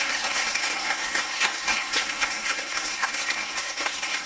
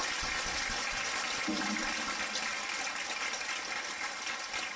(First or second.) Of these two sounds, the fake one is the first